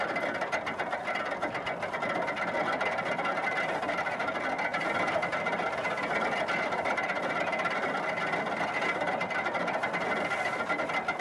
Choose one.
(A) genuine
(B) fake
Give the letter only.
A